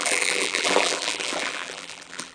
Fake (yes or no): yes